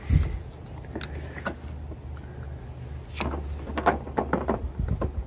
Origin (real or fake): real